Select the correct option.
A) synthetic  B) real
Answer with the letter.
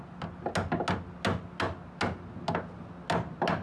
B